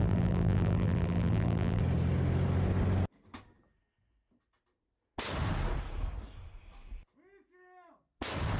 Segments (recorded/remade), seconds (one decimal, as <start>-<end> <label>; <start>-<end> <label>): 0.0-1.8 remade; 1.8-8.6 recorded